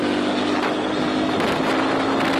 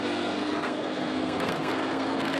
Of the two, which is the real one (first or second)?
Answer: first